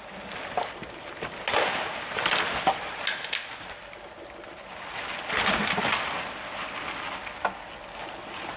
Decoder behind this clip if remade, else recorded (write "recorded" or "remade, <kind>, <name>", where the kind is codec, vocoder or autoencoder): recorded